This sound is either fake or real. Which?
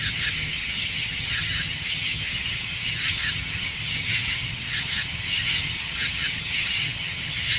fake